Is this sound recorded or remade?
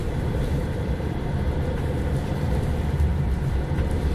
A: remade